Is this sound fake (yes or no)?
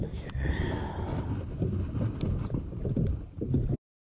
no